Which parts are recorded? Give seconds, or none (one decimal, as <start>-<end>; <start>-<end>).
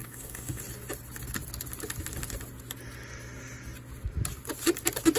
0.6-5.2